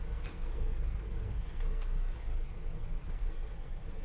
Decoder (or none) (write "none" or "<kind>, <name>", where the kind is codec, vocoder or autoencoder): codec, SNAC